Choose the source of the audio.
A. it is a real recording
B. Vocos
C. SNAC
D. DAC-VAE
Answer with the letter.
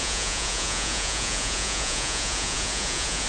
B